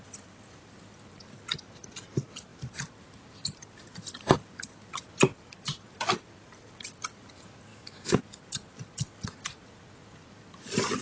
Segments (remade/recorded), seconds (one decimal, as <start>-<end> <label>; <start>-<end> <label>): 0.0-7.7 recorded; 7.7-8.2 remade; 8.2-11.0 recorded